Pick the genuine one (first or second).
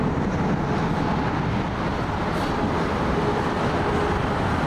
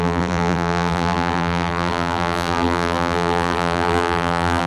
first